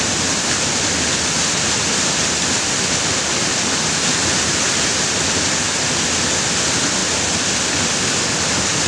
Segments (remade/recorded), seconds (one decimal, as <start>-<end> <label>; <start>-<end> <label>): 0.0-8.9 recorded

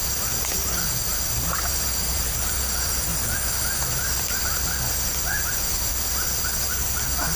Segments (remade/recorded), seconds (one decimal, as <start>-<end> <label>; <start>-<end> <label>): 0.0-7.4 recorded

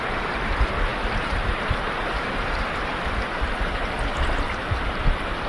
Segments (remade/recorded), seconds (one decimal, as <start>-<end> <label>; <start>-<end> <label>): 0.0-5.5 remade

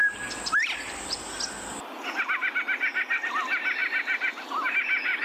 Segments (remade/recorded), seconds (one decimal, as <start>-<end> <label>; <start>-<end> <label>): 0.0-5.2 recorded

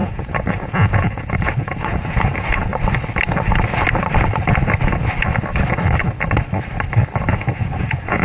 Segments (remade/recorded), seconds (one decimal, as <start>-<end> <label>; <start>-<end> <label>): 0.0-2.7 remade; 2.7-7.3 recorded; 7.3-8.2 remade

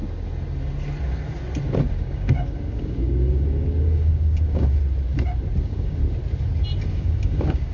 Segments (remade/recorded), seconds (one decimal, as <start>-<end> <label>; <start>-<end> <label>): 0.0-1.9 recorded; 1.9-4.8 remade; 4.8-5.6 recorded; 5.6-6.0 remade; 6.0-6.9 recorded; 6.9-7.7 remade

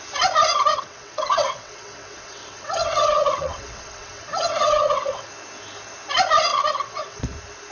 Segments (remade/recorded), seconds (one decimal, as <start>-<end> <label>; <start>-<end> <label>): 0.0-0.7 recorded; 0.7-5.3 remade; 5.3-6.5 recorded; 6.5-7.2 remade; 7.2-7.7 recorded